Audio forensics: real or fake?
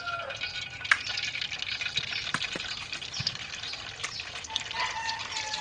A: fake